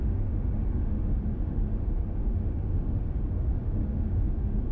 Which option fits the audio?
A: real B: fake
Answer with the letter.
B